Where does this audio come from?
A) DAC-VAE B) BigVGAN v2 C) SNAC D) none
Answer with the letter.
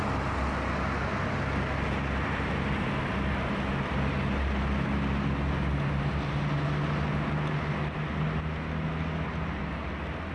D